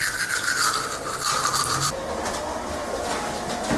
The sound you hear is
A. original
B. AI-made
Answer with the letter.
A